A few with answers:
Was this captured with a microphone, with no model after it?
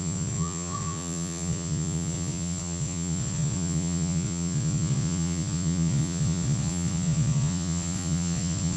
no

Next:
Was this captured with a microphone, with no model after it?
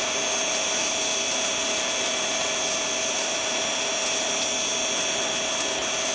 yes